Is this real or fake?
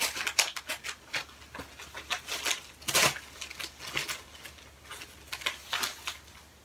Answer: real